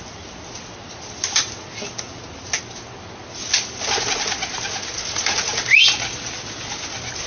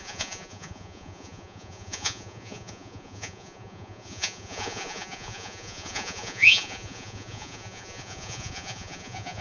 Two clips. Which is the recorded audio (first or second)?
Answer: first